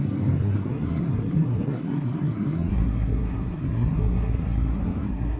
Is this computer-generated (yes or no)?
yes